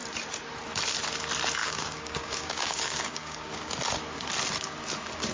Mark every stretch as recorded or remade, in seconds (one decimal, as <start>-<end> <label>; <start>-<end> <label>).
0.0-1.6 recorded; 1.6-3.7 remade; 3.7-5.3 recorded